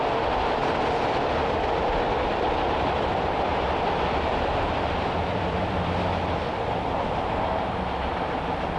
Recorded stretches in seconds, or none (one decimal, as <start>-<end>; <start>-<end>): 0.0-0.6; 5.9-8.8